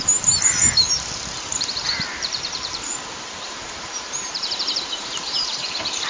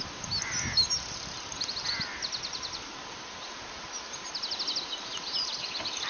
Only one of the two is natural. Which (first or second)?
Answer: second